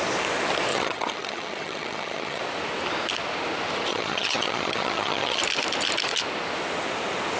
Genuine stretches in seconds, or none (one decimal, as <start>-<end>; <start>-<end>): 0.0-0.7; 2.4-3.9; 5.4-7.4